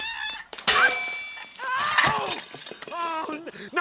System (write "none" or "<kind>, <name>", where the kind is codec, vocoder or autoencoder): none